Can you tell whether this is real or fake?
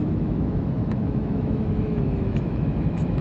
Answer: fake